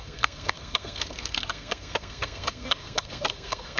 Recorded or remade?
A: remade